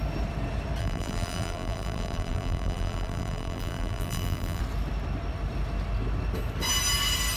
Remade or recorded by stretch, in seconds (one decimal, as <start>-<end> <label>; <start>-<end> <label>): 0.0-0.8 recorded; 0.8-4.6 remade; 4.6-7.4 recorded